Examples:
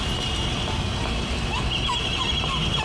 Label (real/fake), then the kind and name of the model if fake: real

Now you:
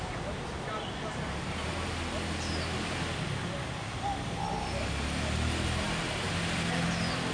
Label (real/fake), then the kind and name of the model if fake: real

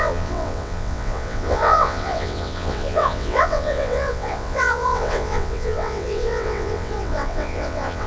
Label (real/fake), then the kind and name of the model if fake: fake, vocoder, WaveNeXt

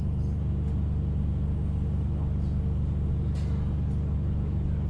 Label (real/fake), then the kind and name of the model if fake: real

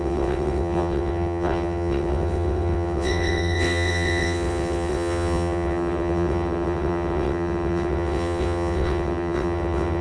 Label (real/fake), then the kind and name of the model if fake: fake, vocoder, WaveNeXt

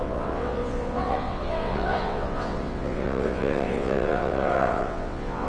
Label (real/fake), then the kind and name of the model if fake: fake, vocoder, WaveNeXt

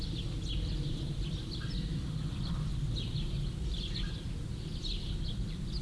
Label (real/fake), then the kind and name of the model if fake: real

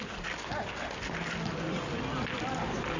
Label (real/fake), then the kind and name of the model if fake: real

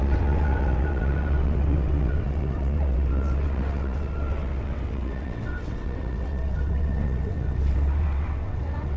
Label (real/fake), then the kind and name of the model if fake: fake, vocoder, WaveNeXt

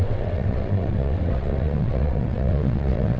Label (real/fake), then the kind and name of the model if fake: fake, vocoder, WaveNeXt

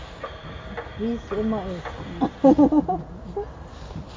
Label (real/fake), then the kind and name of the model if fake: real